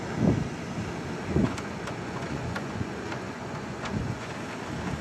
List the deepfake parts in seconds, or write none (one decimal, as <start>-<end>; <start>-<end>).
1.3-4.3